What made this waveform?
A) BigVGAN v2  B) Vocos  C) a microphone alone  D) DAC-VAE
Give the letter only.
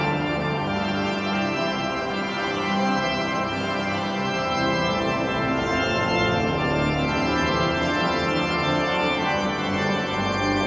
C